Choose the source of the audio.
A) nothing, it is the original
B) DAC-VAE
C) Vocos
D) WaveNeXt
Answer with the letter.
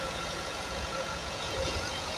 C